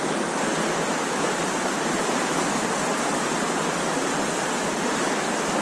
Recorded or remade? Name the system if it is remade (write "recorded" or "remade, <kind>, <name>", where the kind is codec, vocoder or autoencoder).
recorded